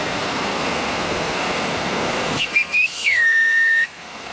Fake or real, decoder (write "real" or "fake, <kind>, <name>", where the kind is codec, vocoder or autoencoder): fake, codec, SNAC